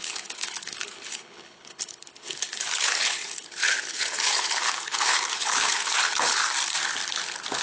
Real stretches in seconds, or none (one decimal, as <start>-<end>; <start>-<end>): 6.4-7.6